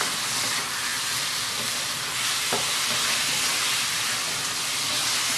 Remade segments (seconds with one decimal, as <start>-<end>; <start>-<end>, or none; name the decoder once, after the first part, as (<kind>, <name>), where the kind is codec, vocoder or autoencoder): none